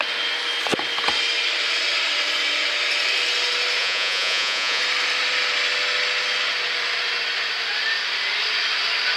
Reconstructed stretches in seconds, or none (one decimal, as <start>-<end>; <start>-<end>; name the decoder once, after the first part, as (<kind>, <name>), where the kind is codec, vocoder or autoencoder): 3.8-4.8 (vocoder, Vocos)